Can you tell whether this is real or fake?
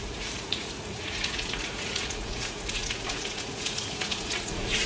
fake